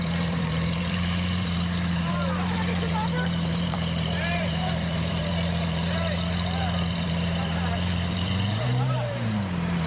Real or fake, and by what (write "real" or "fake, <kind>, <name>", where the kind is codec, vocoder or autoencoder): fake, vocoder, BigVGAN v2